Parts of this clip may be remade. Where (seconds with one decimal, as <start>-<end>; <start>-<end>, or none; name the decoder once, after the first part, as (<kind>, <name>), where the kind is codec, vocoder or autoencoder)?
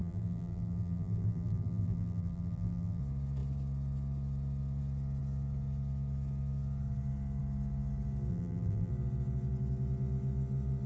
0.0-3.0 (vocoder, BigVGAN v2); 8.3-8.9